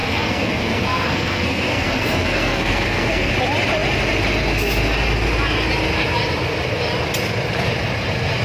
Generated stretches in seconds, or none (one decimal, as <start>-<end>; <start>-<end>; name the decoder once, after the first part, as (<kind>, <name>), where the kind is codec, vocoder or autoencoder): 0.0-3.3 (codec, SNAC)